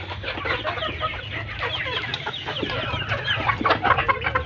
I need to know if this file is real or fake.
real